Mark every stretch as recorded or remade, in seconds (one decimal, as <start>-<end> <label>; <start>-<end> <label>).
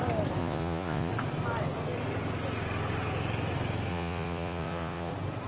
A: 0.0-0.4 recorded; 0.4-1.1 remade; 1.1-3.9 recorded; 3.9-5.1 remade; 5.1-5.5 recorded